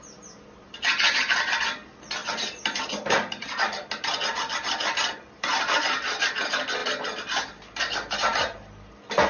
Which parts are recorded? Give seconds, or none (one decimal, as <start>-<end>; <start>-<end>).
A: 0.0-9.3